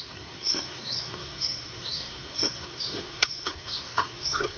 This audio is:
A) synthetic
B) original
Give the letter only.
A